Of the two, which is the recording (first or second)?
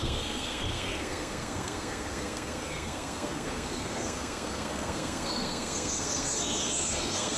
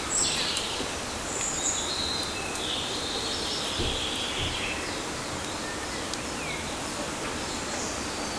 second